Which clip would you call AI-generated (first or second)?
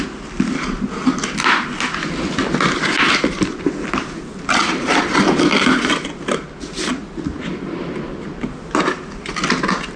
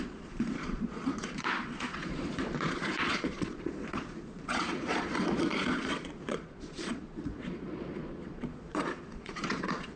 second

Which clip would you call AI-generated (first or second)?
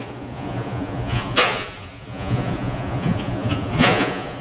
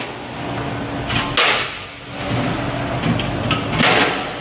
first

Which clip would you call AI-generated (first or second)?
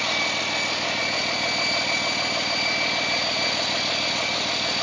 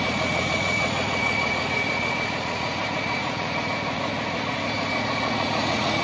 second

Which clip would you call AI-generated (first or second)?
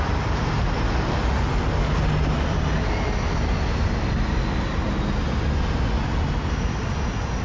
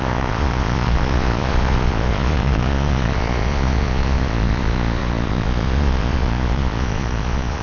second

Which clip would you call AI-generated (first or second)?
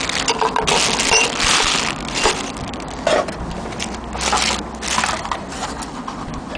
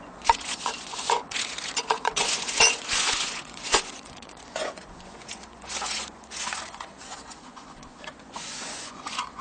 second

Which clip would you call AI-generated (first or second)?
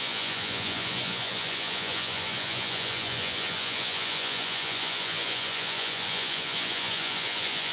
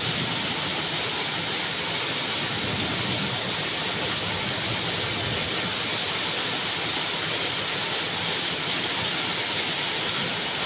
first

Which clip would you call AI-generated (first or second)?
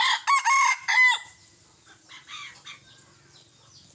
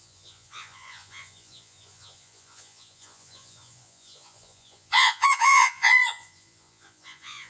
second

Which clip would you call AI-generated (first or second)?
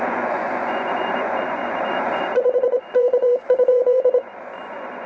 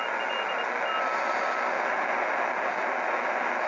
first